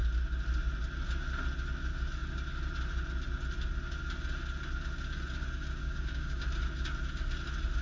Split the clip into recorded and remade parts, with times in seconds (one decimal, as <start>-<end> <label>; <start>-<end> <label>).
0.0-5.8 recorded; 5.8-6.4 remade; 6.4-7.8 recorded